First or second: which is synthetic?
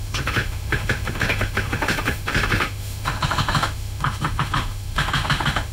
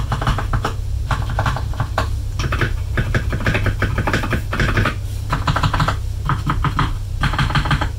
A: first